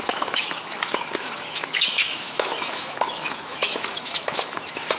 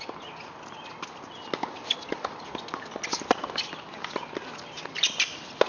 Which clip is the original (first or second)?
second